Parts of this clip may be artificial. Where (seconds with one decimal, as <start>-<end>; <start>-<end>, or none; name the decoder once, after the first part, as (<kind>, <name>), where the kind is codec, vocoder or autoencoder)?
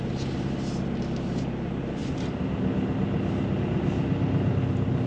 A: none